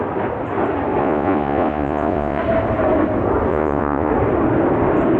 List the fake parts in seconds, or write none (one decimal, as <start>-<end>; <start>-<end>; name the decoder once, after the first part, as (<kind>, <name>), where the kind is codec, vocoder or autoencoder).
1.0-2.4 (vocoder, Vocos); 3.5-4.1

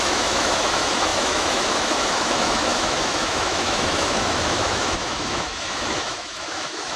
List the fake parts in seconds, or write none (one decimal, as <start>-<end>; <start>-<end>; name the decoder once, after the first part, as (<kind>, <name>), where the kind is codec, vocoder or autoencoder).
0.0-7.0 (autoencoder, DAC-VAE)